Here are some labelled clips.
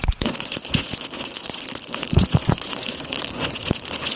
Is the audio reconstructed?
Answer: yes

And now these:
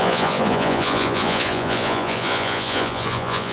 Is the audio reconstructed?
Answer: yes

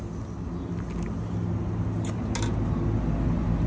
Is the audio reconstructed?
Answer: no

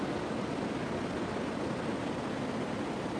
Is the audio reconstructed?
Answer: no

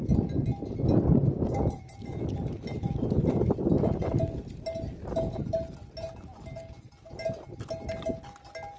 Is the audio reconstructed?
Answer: no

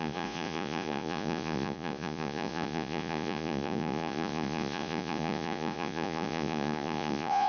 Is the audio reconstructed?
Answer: yes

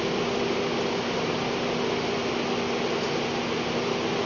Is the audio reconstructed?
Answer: no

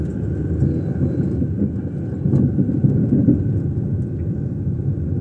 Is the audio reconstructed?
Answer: no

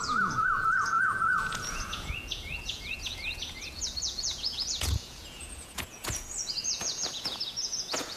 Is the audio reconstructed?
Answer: yes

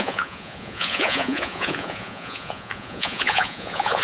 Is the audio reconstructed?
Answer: yes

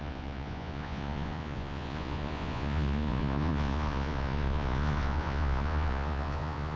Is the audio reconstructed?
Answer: yes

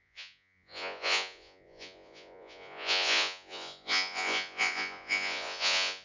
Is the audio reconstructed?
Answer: yes